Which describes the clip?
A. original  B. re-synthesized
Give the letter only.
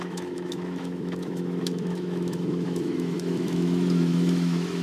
B